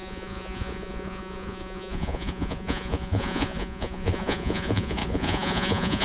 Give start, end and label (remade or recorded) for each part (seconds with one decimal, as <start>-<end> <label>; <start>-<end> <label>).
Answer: 0.0-6.0 remade